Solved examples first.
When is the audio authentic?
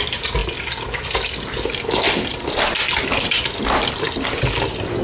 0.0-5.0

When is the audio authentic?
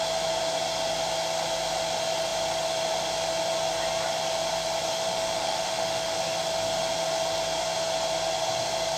0.0-4.9; 6.2-9.0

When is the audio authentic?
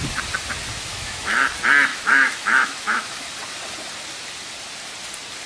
0.0-0.9; 1.4-1.9; 3.3-5.5